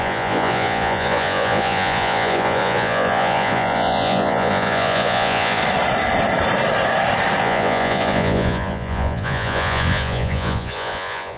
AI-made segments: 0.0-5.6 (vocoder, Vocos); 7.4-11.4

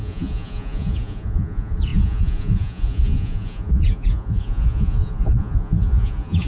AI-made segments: 0.0-6.5 (vocoder, Vocos)

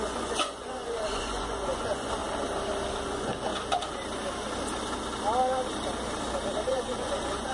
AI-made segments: 0.0-2.2 (vocoder, Vocos); 3.0-3.5; 6.7-7.5

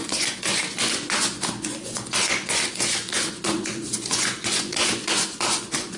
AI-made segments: 0.0-6.0 (vocoder, Vocos)

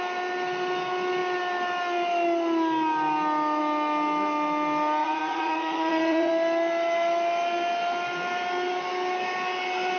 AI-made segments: 5.0-6.3 (vocoder, Vocos)